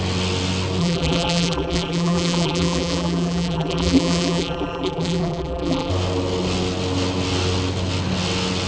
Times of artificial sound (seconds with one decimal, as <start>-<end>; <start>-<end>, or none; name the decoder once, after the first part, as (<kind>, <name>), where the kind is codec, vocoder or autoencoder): 0.8-5.9 (vocoder, BigVGAN v2)